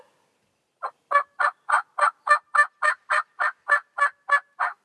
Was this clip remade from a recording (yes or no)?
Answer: no